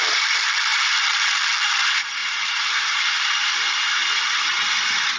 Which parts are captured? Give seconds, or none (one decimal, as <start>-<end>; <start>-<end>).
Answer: none

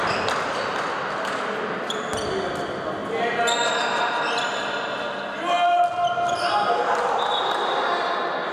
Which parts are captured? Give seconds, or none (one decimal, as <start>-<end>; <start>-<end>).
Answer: 0.0-8.5

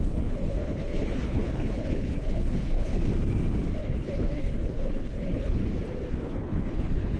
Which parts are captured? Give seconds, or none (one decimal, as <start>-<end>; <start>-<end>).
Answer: 3.0-3.8; 5.6-6.1

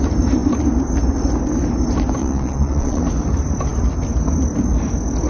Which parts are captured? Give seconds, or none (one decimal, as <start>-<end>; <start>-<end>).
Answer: 0.0-2.2; 3.0-5.3

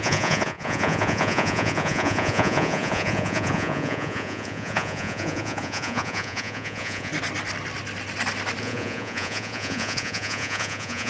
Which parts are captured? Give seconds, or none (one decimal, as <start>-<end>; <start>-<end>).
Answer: 7.1-8.6